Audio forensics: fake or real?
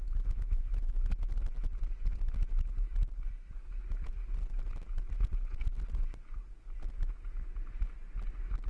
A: real